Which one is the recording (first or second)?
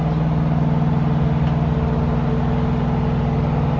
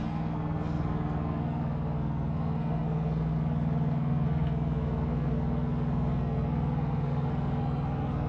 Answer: first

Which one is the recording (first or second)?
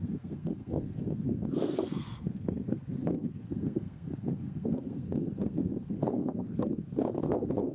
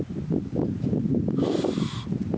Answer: second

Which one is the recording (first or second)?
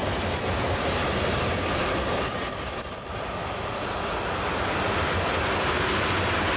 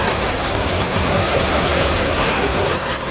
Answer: first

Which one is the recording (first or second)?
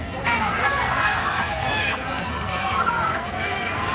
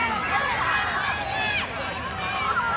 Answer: second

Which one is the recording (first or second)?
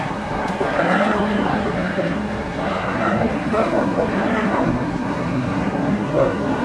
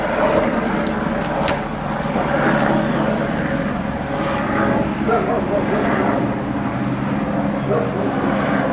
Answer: second